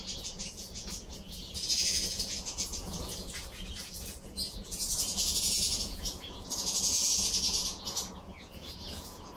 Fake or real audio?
fake